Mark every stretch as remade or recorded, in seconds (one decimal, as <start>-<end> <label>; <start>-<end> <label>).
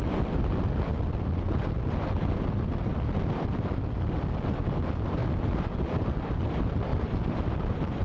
0.0-6.9 recorded; 6.9-8.0 remade